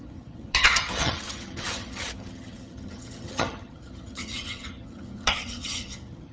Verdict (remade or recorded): remade